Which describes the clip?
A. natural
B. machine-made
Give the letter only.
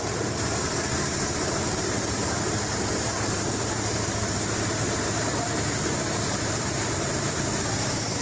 B